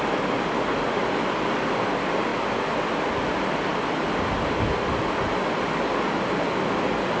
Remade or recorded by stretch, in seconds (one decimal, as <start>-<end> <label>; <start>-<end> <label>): 0.0-7.2 recorded